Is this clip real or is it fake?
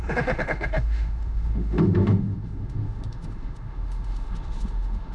fake